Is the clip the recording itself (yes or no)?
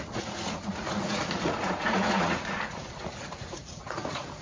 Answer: no